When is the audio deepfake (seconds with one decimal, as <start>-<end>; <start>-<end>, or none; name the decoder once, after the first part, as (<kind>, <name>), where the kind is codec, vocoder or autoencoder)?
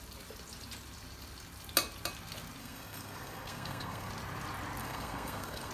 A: 2.6-4.1 (codec, SNAC); 4.8-5.7